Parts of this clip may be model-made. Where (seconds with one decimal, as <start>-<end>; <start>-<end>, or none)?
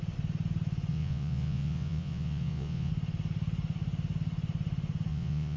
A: 0.9-2.9; 5.1-5.6